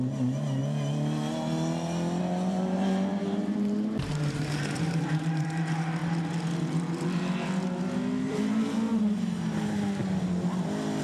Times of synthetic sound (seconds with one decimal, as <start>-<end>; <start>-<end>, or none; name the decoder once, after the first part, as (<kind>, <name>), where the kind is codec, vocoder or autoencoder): 0.0-0.6 (vocoder, BigVGAN v2); 2.2-6.0; 8.3-8.9